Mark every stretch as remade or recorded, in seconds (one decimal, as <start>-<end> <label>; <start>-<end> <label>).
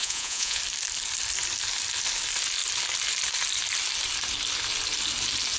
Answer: 0.0-0.6 remade; 0.6-5.6 recorded